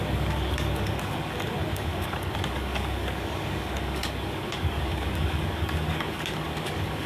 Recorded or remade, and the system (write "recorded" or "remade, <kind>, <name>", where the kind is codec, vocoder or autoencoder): remade, codec, DAC